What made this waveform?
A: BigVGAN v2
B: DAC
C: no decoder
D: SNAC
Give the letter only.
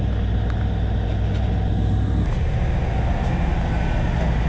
C